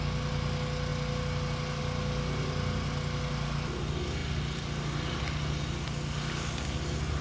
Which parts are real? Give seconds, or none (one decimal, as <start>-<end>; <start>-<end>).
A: 0.0-7.2